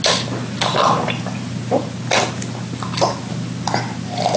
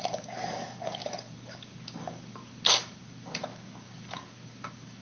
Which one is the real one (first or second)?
first